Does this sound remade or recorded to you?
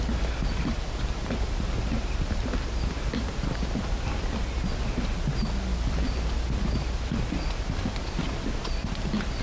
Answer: recorded